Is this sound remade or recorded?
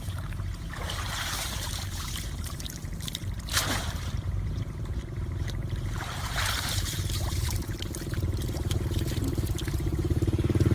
remade